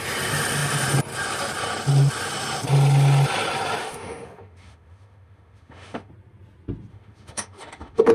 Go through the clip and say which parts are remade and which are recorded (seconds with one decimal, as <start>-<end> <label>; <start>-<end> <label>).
0.0-3.8 recorded; 3.8-6.1 remade; 6.1-6.9 recorded; 6.9-8.1 remade